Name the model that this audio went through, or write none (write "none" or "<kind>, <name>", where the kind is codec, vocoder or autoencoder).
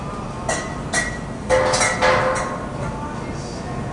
none